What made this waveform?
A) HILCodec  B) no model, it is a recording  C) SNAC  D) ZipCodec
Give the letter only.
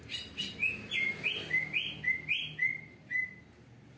B